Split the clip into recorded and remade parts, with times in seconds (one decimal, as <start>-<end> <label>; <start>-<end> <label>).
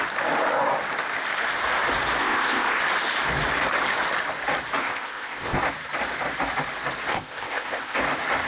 0.0-2.2 recorded; 2.2-2.8 remade; 2.8-4.8 recorded; 4.8-5.6 remade; 5.6-7.1 recorded; 7.1-8.0 remade; 8.0-8.5 recorded